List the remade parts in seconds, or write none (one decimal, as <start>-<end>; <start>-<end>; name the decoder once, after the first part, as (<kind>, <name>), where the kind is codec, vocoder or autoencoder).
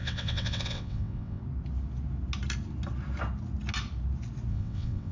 0.0-1.4 (vocoder, WaveNeXt); 4.5-5.1